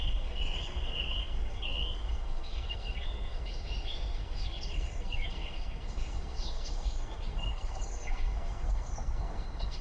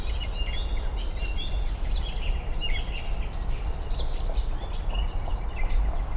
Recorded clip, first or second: second